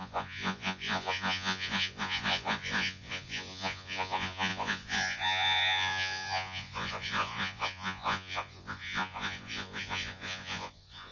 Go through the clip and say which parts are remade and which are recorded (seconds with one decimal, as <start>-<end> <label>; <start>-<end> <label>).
0.0-11.1 remade